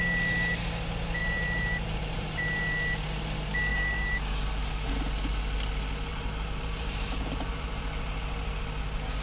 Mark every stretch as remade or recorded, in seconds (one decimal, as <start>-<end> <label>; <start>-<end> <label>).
0.0-1.2 recorded; 1.2-2.4 remade; 2.4-3.7 recorded; 3.7-4.7 remade; 4.7-6.1 recorded; 6.1-7.8 remade; 7.8-9.2 recorded